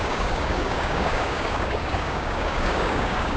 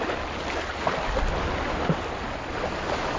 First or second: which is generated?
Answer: first